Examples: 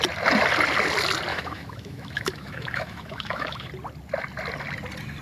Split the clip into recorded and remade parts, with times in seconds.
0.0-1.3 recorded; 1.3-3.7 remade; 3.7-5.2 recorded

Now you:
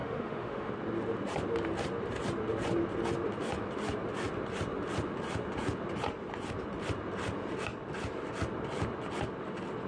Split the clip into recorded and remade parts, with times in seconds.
0.0-0.7 remade; 0.7-9.9 recorded